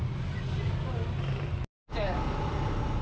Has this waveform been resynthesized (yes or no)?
no